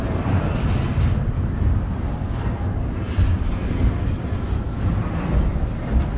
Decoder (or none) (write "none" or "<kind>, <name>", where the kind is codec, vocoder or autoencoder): none